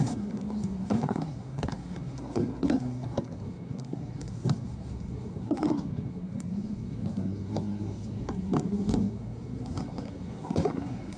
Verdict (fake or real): fake